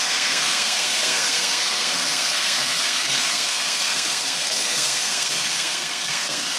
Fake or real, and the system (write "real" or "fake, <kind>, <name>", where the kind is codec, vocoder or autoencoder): fake, codec, SNAC